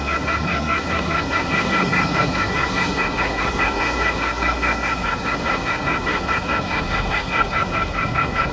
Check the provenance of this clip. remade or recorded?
remade